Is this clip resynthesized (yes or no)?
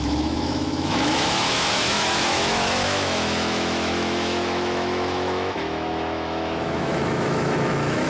yes